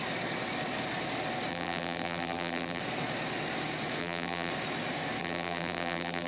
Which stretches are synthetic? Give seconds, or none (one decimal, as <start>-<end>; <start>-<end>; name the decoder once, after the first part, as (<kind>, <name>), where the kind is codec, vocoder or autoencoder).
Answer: 1.5-2.8 (vocoder, BigVGAN v2); 4.0-4.5; 5.2-6.3